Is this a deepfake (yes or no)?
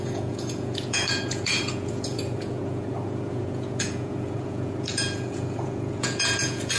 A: yes